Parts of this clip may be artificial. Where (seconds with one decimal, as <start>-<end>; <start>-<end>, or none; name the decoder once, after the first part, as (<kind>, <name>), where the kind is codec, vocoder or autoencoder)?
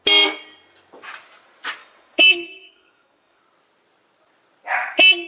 1.8-3.4 (codec, DAC)